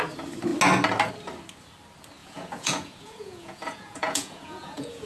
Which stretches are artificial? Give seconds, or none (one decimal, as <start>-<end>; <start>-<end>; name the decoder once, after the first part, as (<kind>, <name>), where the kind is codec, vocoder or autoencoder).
2.2-5.1 (vocoder, Vocos)